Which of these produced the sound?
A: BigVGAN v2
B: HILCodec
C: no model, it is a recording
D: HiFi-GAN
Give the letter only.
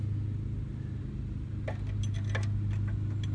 C